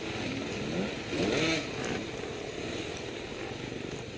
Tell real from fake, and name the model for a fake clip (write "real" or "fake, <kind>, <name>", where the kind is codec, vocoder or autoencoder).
real